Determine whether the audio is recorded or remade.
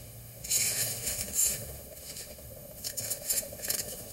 remade